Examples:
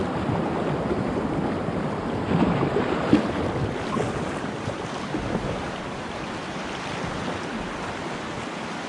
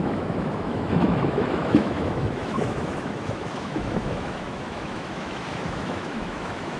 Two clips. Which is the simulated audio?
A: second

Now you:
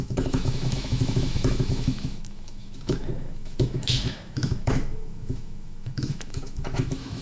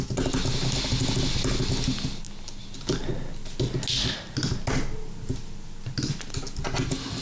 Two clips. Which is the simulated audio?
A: first